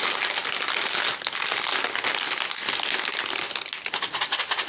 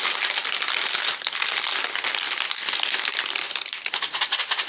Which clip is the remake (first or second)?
second